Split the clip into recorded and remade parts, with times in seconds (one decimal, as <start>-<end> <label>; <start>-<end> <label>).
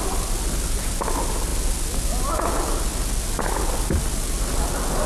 0.0-5.1 recorded